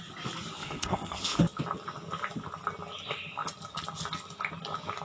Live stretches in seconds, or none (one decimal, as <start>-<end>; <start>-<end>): 0.0-0.6; 1.4-5.0